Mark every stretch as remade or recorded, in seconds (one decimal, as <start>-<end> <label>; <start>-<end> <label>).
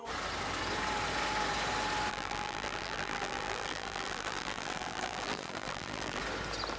0.0-2.1 recorded; 2.1-6.2 remade; 6.2-6.8 recorded